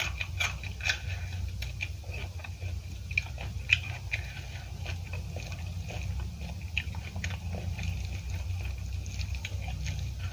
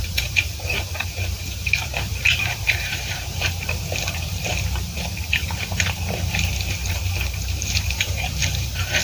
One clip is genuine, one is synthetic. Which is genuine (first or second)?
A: first